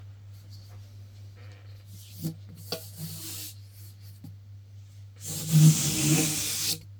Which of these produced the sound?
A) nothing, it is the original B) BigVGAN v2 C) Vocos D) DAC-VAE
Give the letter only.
A